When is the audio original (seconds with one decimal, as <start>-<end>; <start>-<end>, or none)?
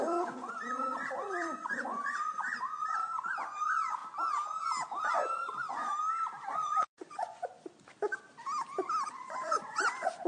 4.0-5.0; 5.9-6.5; 7.5-9.1